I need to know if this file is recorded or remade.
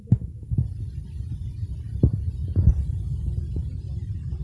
recorded